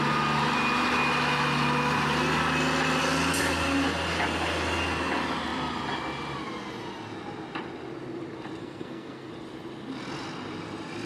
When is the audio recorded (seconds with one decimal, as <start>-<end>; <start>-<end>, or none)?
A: 0.0-8.6; 9.3-11.1